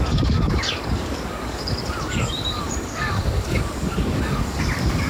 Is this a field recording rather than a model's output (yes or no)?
no